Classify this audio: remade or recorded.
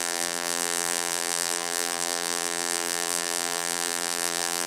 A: remade